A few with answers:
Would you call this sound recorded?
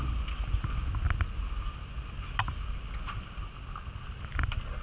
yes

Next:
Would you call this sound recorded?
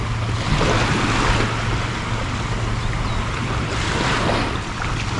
yes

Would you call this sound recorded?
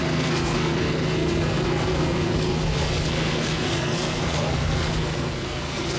no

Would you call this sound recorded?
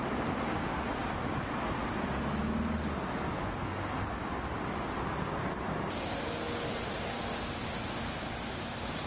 yes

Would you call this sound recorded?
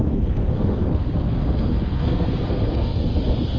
no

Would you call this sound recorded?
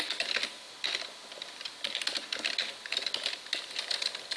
yes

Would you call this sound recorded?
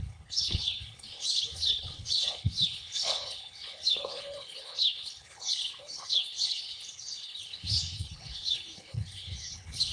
no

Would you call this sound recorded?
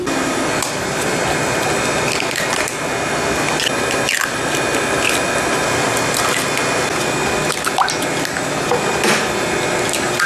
yes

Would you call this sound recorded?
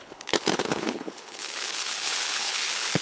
no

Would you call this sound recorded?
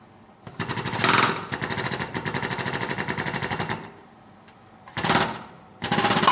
yes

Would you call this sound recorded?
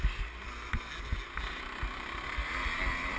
yes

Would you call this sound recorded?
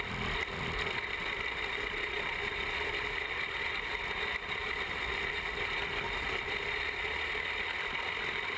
yes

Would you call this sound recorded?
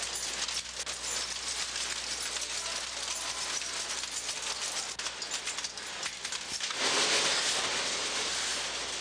yes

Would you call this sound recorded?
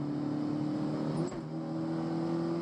yes